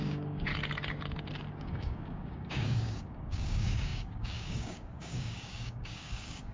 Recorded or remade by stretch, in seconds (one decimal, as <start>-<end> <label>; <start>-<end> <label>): 0.0-0.5 remade; 0.5-1.6 recorded; 1.6-6.5 remade